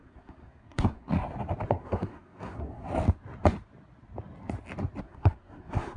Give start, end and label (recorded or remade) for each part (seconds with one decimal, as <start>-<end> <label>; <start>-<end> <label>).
0.0-1.1 remade; 1.1-1.7 recorded; 1.7-2.9 remade; 2.9-5.0 recorded; 5.0-6.0 remade